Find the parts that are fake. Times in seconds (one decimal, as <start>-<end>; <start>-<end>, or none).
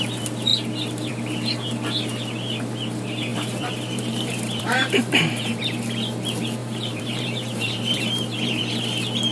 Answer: 3.3-5.6; 6.6-8.6